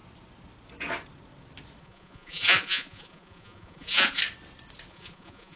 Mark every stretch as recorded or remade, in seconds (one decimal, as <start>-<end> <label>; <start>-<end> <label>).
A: 0.0-1.8 recorded; 1.8-4.2 remade; 4.2-4.9 recorded; 4.9-5.6 remade